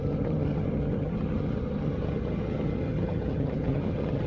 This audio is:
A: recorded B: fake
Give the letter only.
B